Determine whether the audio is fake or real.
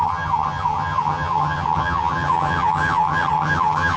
fake